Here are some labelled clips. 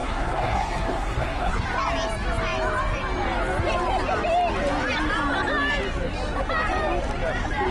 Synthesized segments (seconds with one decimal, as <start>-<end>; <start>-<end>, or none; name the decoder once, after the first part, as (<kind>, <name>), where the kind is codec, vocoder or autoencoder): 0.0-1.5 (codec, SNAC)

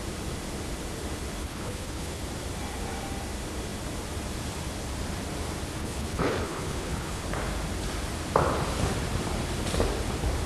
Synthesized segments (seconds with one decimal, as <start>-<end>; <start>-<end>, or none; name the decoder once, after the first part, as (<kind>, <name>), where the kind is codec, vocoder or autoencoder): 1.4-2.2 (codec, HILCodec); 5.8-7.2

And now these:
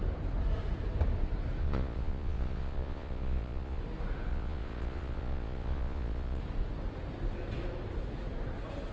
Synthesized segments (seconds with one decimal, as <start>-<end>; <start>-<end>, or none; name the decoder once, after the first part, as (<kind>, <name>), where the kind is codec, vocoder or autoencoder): 1.6-3.8 (vocoder, Vocos); 4.3-6.4

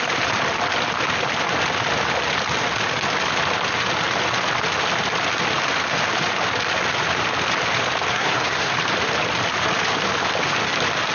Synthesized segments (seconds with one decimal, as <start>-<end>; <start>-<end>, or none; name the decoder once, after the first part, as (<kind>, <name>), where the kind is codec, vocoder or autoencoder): 8.1-8.7 (codec, SNAC)

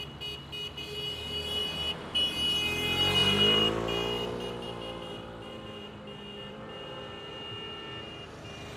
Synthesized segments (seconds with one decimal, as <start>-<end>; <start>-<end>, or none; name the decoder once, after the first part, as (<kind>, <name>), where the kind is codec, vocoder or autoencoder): 3.2-7.3 (vocoder, BigVGAN v2)

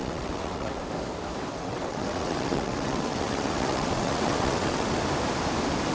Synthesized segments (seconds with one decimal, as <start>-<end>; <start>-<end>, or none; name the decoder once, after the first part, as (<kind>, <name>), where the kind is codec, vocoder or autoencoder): 0.0-0.8 (vocoder, WaveNeXt); 1.5-5.0

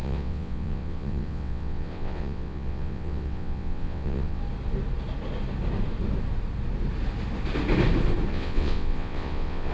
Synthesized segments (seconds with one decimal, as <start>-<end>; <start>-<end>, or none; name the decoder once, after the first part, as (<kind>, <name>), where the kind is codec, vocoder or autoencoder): 0.0-4.4 (vocoder, WaveNeXt); 8.3-9.7

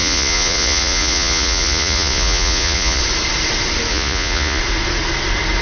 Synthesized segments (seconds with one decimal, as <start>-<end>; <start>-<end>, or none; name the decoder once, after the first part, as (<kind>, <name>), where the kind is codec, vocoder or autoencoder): 0.0-3.0 (vocoder, Vocos); 3.9-4.6